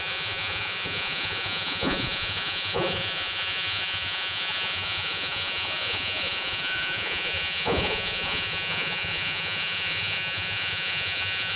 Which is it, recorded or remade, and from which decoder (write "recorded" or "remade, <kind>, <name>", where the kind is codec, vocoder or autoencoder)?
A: remade, vocoder, Vocos